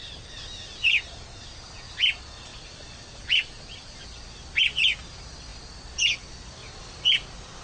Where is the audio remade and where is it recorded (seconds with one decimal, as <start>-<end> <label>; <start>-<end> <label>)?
0.0-7.6 recorded